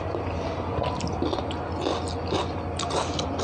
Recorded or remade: recorded